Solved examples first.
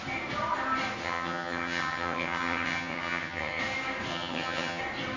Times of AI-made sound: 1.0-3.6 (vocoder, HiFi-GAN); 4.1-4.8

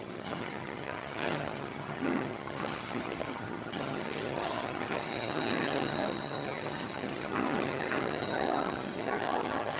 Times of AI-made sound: 0.0-9.8 (vocoder, HiFi-GAN)